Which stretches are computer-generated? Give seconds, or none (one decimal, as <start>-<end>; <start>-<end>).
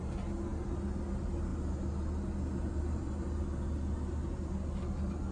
none